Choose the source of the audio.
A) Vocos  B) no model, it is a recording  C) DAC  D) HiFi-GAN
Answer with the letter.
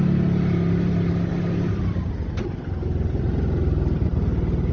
B